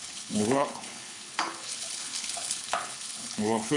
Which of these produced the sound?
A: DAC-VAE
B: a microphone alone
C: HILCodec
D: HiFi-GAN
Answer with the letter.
C